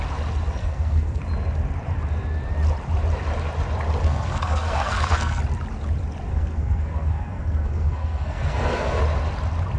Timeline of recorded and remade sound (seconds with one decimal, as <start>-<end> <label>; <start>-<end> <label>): 0.0-0.6 recorded; 0.6-1.2 remade; 1.2-4.0 recorded; 4.0-5.4 remade; 5.4-6.3 recorded; 6.3-9.0 remade; 9.0-9.8 recorded